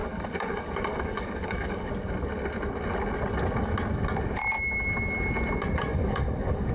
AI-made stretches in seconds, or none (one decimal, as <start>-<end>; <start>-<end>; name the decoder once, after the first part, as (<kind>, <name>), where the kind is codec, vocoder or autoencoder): 0.0-1.9 (codec, DAC); 5.9-6.7